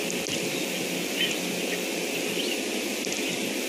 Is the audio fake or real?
real